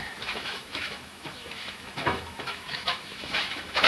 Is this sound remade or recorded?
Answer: remade